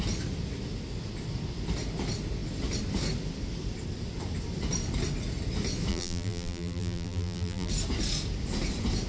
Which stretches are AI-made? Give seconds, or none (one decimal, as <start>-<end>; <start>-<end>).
5.9-7.7